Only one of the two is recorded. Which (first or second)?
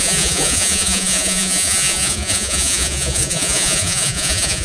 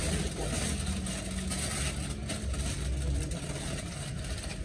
second